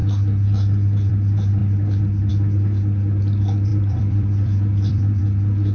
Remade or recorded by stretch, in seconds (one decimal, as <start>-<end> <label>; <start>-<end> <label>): 0.0-3.7 recorded; 3.7-5.2 remade; 5.2-5.7 recorded